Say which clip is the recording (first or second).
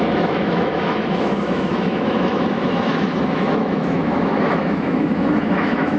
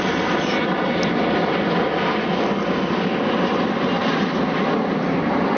second